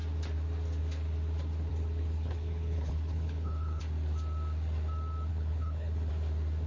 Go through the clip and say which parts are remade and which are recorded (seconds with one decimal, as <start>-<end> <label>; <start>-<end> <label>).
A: 0.0-1.7 recorded; 1.7-3.8 remade; 3.8-5.3 recorded; 5.3-6.1 remade; 6.1-6.7 recorded